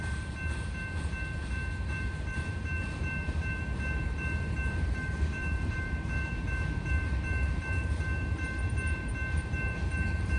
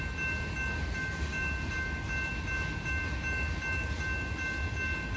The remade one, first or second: first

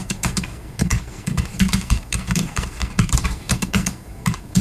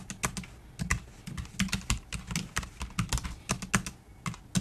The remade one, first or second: first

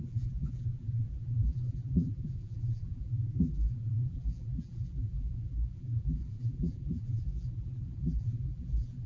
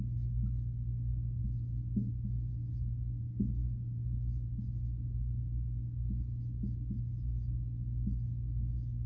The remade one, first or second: first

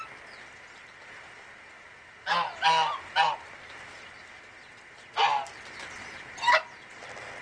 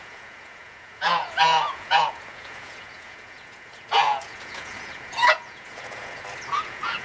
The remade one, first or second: second